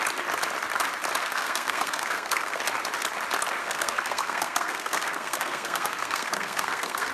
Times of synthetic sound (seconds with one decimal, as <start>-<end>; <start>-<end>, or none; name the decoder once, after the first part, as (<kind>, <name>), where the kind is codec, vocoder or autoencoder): 1.2-2.6 (codec, SNAC); 3.6-7.1